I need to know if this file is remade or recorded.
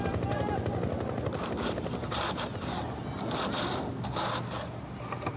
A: recorded